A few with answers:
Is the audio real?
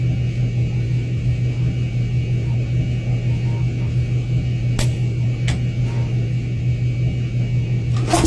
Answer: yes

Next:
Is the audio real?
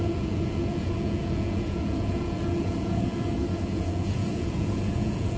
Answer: no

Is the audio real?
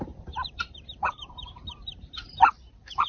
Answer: no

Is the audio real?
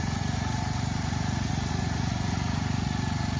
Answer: no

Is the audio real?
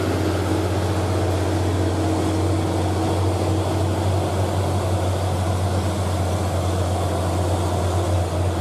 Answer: yes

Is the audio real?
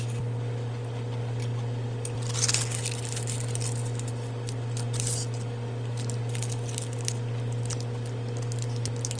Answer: yes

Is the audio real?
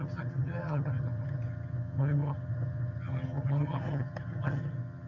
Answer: no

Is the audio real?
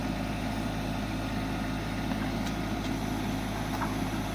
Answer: yes